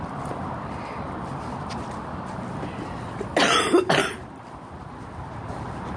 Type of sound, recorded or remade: recorded